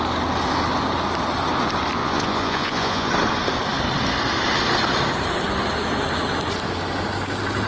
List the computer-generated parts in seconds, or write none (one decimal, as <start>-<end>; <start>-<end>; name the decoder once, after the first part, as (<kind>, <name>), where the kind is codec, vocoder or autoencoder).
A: 2.0-3.1 (vocoder, Vocos)